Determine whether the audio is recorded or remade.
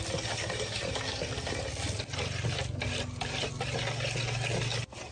recorded